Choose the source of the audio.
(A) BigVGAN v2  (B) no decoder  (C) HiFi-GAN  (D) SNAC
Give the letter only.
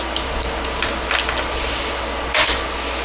B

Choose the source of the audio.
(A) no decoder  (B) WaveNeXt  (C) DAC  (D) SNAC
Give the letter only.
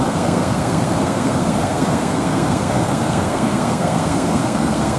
D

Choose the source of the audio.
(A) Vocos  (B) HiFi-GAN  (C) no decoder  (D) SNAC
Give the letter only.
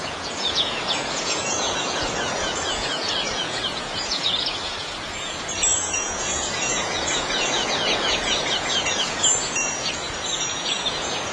A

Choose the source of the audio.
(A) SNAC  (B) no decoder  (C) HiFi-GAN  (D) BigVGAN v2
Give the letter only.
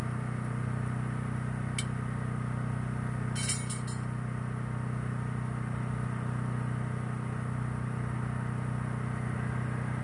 B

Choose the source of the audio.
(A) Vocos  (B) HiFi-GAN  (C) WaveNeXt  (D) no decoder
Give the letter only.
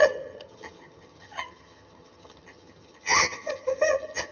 B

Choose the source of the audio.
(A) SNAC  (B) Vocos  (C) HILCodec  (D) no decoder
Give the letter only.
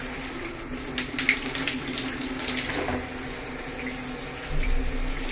D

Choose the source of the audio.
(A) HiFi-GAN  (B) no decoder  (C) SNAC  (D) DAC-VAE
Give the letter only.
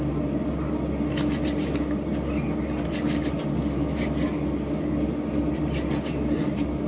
B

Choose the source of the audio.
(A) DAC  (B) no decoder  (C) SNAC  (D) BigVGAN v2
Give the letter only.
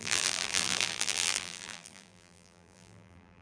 D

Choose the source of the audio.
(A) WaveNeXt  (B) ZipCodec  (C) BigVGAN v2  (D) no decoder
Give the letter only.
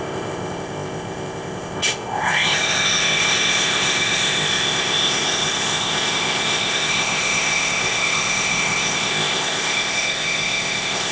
B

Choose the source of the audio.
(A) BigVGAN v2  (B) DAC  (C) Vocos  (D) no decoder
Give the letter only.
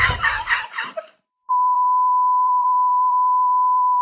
A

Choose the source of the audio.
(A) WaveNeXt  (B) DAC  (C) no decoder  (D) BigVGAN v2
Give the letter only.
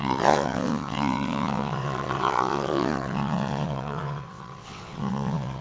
A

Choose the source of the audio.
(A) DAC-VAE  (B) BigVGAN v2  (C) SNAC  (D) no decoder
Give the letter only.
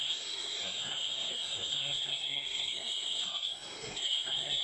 C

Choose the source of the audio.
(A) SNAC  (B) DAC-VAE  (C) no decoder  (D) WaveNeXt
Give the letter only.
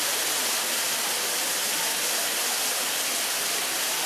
C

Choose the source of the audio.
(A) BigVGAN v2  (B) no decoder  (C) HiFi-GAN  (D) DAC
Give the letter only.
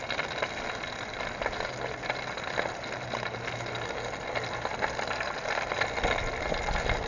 B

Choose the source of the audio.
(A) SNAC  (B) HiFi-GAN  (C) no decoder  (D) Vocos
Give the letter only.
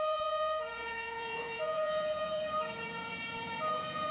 D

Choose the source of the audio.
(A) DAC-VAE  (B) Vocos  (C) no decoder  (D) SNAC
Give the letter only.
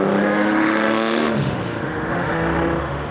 A